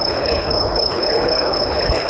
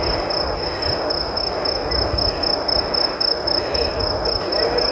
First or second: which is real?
second